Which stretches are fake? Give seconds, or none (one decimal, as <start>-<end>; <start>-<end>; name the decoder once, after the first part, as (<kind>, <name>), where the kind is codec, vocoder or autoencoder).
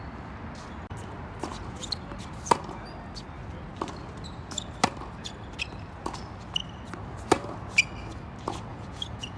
8.7-9.4 (vocoder, Vocos)